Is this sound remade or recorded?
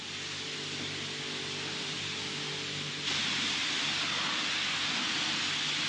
recorded